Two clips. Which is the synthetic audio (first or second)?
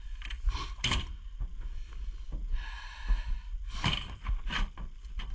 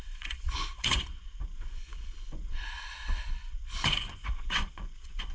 second